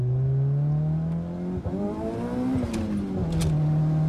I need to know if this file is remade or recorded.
recorded